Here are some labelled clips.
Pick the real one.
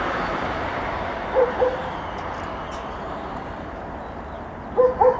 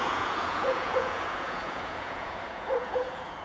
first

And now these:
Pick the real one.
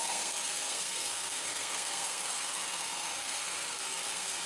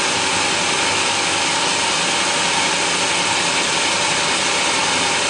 second